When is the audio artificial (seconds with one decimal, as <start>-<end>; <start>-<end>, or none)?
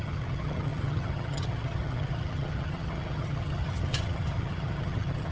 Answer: 0.0-5.3